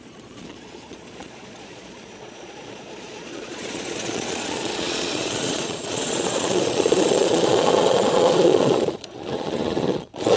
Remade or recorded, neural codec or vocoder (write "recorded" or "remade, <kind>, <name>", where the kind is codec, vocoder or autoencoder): remade, vocoder, Vocos